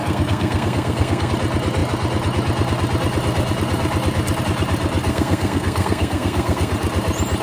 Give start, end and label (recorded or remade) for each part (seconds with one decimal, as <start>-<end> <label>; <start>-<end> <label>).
0.0-1.3 remade; 1.3-5.1 recorded; 5.1-6.7 remade; 6.7-7.4 recorded